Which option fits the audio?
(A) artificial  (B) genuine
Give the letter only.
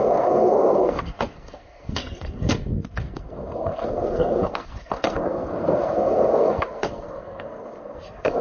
A